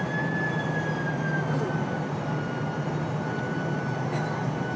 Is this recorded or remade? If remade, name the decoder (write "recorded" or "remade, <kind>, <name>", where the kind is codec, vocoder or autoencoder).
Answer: recorded